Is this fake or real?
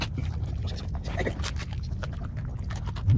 real